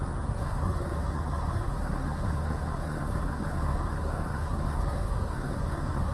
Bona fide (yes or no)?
no